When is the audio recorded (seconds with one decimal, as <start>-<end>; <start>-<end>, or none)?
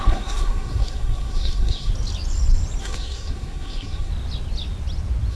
1.9-2.8; 4.1-5.3